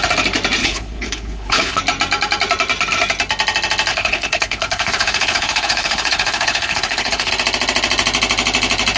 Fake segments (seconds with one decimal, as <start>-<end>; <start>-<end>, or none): 0.6-1.8; 3.9-7.3